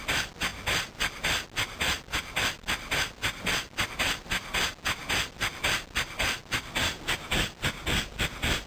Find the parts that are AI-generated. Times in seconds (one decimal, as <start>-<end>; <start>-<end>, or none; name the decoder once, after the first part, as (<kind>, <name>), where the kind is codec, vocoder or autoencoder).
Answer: none